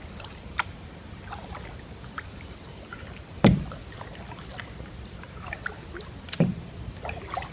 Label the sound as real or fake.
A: real